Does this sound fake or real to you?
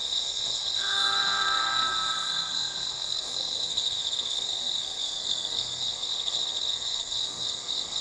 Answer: fake